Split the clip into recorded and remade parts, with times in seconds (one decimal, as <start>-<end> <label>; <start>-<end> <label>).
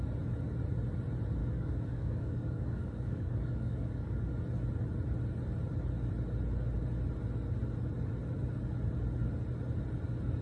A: 0.0-1.4 recorded; 1.4-4.3 remade; 4.3-10.4 recorded